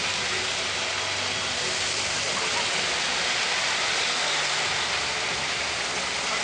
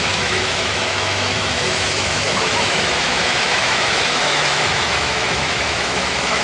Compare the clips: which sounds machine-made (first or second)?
second